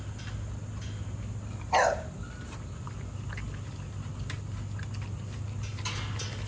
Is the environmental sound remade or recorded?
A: recorded